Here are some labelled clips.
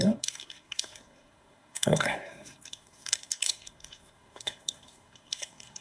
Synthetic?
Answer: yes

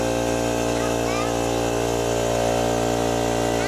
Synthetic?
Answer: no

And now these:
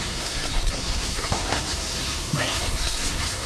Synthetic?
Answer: yes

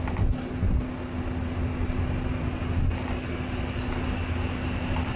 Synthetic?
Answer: no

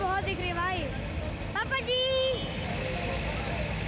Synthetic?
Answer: no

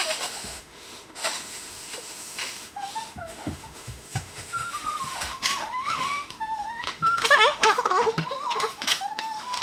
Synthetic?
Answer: yes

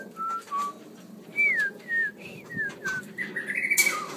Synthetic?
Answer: no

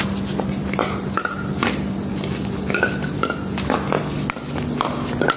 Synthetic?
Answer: no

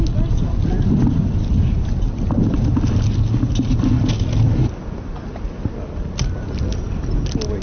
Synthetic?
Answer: no